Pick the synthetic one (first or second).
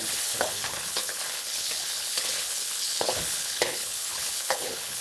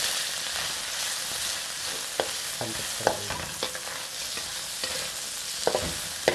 first